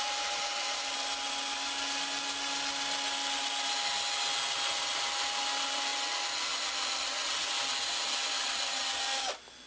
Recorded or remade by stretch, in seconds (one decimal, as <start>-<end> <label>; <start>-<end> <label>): 0.0-9.7 recorded